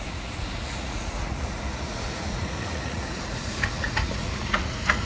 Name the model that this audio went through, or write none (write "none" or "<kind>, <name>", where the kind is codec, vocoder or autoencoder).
vocoder, Vocos